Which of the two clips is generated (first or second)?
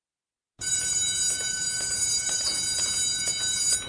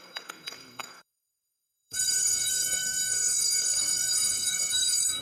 second